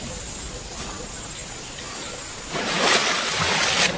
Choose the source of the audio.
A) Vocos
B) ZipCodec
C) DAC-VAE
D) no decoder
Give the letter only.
D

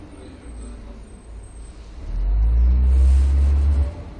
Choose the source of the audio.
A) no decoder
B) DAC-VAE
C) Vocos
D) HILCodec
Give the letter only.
A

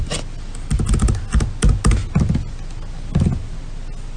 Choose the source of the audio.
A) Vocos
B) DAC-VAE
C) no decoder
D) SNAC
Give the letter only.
C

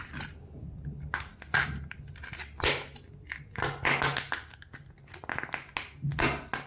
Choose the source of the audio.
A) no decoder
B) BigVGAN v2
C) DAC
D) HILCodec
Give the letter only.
A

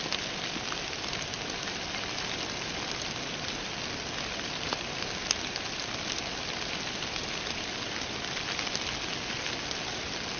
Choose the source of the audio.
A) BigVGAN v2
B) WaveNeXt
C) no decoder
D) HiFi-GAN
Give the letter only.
C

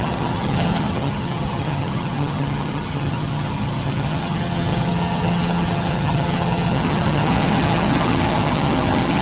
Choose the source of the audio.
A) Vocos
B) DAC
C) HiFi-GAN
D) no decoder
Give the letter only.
C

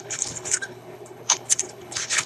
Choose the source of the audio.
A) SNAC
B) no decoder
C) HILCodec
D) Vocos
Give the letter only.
C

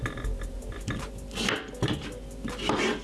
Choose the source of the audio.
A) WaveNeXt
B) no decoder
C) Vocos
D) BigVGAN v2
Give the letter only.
B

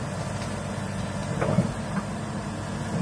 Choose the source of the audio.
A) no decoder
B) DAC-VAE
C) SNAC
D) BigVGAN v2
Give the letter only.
A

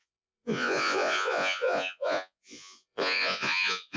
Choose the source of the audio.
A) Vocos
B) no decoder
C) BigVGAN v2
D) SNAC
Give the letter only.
A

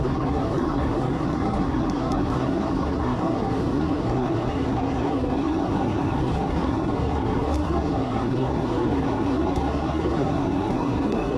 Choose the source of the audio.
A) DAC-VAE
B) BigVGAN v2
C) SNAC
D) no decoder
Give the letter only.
C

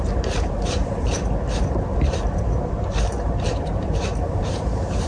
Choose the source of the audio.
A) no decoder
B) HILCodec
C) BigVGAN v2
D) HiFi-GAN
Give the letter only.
C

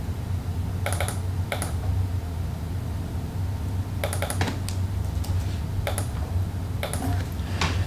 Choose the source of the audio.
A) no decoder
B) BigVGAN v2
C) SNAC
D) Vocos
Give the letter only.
A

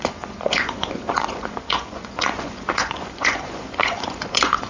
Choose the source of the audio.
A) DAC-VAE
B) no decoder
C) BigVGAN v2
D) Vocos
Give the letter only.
D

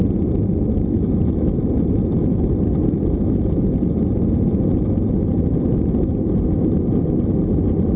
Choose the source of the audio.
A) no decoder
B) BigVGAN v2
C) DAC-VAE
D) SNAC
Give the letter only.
A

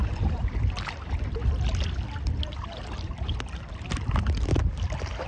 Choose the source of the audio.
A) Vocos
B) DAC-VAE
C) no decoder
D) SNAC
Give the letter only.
C